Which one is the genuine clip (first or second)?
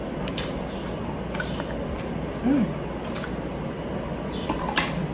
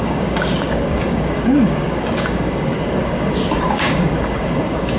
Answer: first